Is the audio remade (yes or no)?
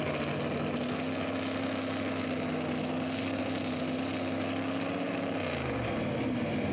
no